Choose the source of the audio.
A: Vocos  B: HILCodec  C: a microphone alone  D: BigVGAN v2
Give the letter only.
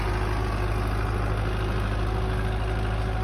C